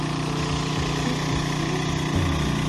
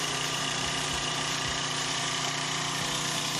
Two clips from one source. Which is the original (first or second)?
first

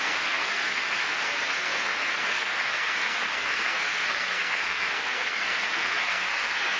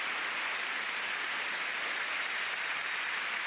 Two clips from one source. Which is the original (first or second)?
second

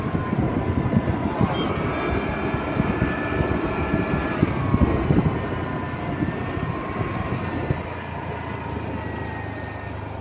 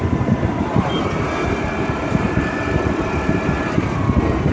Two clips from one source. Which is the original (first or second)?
first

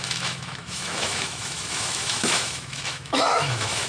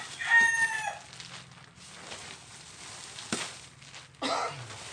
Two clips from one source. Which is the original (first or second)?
second